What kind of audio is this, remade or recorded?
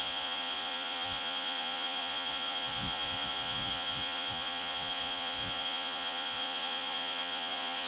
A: remade